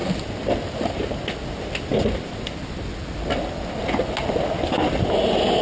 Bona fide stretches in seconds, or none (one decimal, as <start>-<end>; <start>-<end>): 0.0-5.6